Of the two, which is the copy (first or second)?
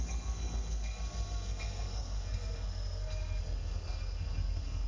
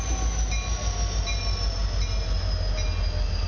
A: first